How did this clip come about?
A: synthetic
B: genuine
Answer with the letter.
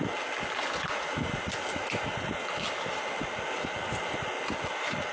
B